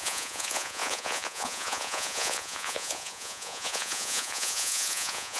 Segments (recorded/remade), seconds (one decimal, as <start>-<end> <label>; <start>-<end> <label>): 0.0-5.4 remade